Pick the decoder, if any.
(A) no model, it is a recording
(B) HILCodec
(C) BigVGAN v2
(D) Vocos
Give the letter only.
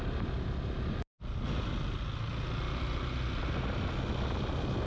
A